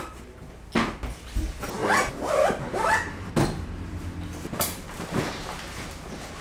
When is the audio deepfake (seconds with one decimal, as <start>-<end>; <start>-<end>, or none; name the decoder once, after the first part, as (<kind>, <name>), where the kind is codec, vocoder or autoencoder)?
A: 1.8-5.6 (vocoder, BigVGAN v2)